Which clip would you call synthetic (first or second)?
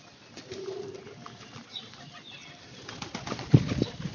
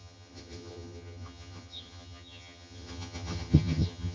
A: second